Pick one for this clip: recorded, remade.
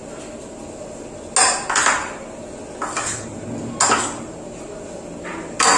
recorded